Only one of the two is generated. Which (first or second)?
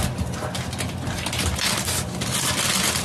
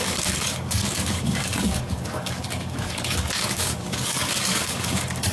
second